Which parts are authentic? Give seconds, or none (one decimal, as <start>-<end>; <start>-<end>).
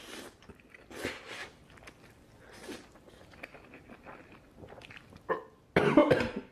0.0-6.5